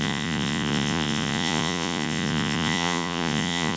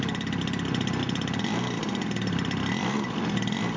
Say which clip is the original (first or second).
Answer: second